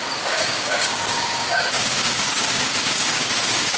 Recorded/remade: remade